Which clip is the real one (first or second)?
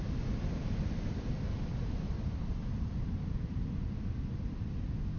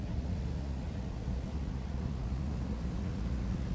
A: first